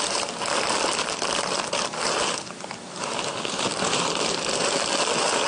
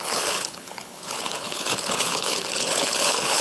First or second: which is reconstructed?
second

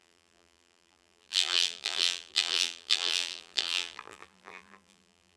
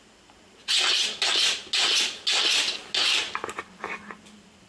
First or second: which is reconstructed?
first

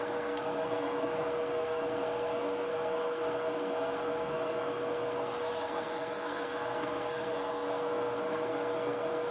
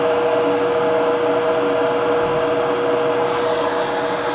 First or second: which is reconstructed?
first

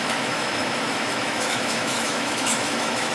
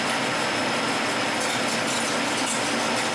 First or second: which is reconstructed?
first